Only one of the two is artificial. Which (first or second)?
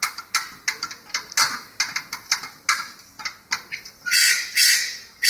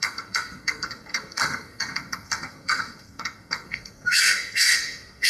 second